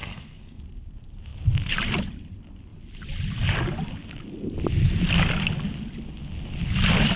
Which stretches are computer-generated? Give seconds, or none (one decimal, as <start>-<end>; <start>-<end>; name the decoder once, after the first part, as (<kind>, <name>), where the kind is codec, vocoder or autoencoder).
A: 0.0-0.6 (codec, SNAC)